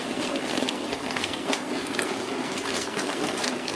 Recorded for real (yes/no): no